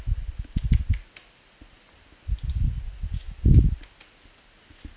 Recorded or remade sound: recorded